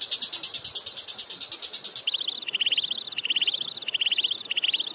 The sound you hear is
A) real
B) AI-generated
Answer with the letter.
A